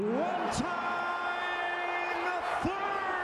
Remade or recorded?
recorded